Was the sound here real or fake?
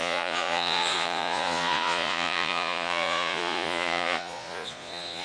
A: fake